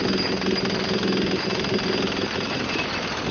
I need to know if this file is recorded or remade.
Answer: recorded